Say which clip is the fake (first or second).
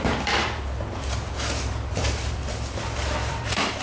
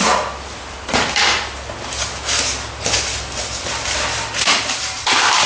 first